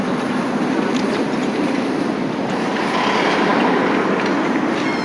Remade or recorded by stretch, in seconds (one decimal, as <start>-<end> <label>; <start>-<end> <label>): 0.0-1.4 recorded; 1.4-1.9 remade; 1.9-5.0 recorded